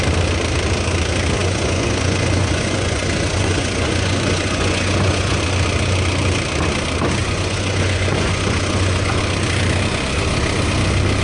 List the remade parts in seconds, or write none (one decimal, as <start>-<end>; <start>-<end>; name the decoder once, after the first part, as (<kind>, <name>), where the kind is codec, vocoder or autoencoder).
1.4-5.4 (vocoder, Vocos); 7.2-9.2